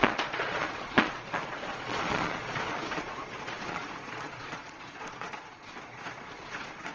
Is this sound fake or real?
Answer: fake